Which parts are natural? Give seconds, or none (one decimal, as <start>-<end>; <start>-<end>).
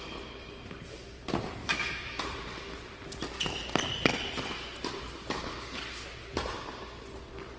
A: 0.0-1.6; 2.2-7.6